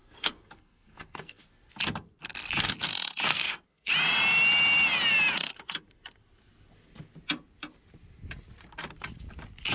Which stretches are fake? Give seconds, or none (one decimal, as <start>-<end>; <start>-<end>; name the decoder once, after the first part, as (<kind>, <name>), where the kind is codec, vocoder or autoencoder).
0.0-1.7 (codec, SNAC); 3.3-3.9